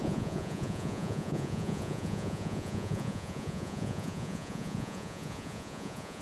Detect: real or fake fake